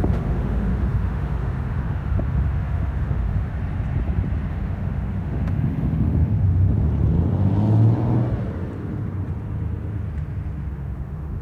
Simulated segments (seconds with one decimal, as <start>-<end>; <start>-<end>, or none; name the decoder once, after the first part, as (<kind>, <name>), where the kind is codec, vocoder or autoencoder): 0.0-3.5 (autoencoder, DAC-VAE); 4.5-6.9; 10.7-11.4